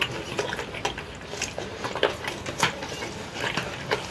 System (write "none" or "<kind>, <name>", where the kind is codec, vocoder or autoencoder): none